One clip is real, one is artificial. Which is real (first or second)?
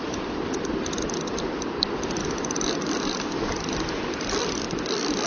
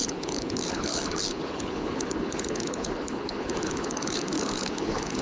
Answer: first